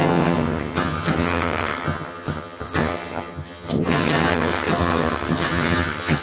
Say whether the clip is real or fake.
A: fake